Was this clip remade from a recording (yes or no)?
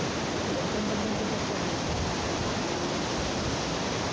no